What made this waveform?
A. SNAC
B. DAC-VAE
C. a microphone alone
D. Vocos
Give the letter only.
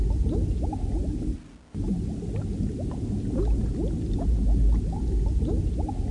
C